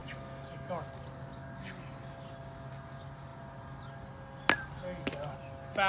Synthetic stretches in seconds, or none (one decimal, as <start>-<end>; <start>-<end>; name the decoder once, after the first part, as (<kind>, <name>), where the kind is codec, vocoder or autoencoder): 0.0-0.7 (codec, DAC)